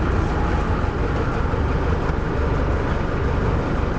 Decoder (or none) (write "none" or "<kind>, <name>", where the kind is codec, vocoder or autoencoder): none